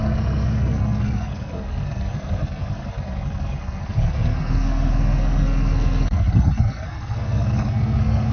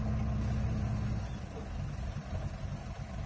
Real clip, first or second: second